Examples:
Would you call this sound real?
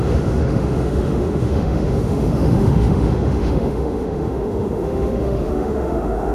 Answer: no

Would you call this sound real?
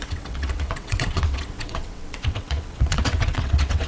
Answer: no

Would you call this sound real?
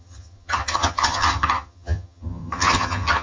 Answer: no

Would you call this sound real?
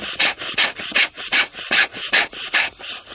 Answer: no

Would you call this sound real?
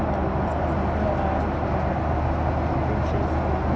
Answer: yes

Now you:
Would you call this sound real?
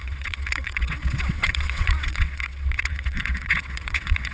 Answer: no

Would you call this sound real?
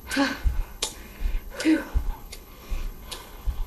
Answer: no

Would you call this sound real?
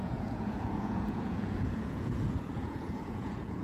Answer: no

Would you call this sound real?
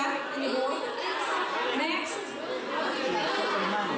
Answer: yes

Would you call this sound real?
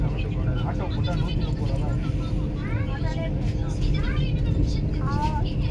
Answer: yes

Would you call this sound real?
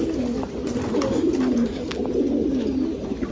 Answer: yes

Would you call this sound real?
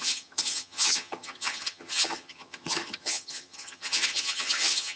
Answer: no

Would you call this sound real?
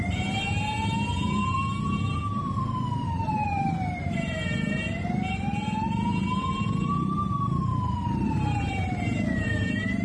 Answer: no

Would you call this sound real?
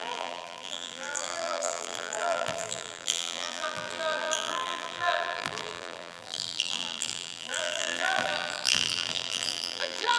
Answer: no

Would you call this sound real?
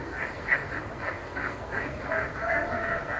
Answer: no